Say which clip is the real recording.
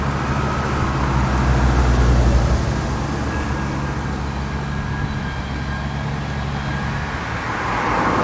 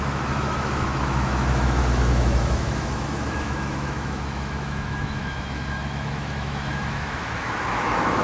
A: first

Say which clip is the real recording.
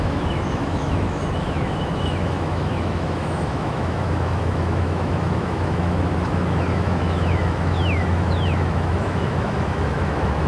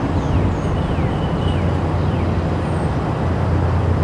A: second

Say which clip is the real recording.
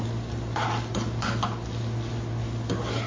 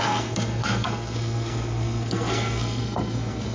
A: first